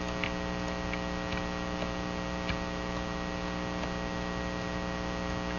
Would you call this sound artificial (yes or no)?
no